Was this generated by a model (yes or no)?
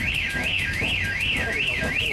yes